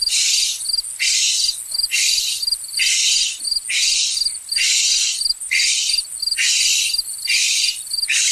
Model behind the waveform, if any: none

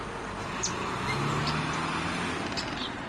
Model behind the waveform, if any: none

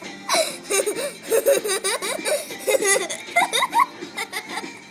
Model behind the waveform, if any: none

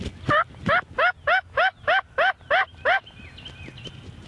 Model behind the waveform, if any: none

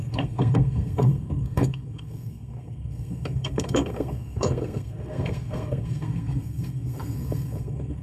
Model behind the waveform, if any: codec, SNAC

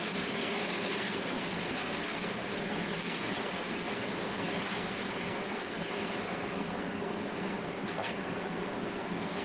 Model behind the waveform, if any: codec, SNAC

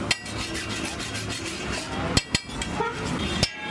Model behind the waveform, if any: none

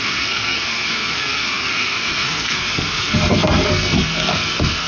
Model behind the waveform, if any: codec, SNAC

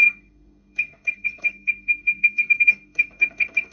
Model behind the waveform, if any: codec, SNAC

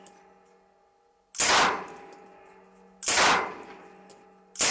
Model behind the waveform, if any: none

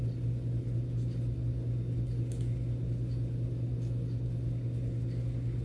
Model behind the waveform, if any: none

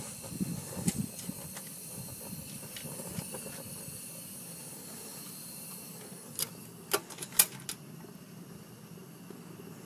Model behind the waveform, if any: none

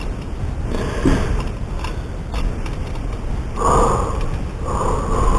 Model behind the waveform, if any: none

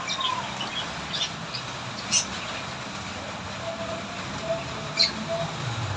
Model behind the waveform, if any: none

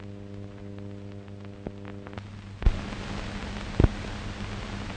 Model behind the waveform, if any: none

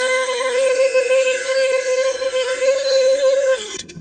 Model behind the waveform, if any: codec, SNAC